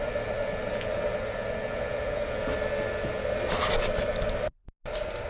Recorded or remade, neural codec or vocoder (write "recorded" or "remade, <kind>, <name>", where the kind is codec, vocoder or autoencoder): recorded